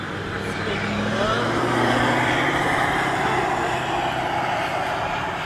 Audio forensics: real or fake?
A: fake